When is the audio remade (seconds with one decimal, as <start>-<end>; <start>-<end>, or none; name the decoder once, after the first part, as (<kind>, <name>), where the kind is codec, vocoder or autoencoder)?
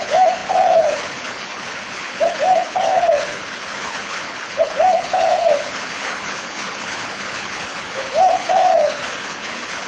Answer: 0.0-9.9 (codec, HILCodec)